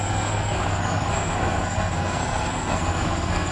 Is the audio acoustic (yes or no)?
no